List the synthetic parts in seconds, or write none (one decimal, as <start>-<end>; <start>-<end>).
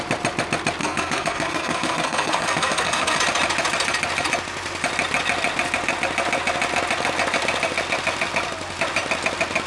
0.8-3.2